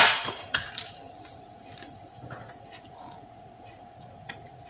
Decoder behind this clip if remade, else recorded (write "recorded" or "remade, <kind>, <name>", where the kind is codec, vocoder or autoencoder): remade, vocoder, Vocos